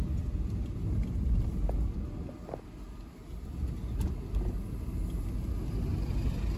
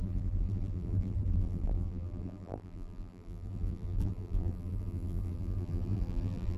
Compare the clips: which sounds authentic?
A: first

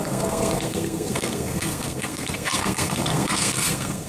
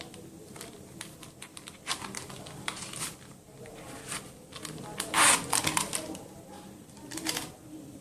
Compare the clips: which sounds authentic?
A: second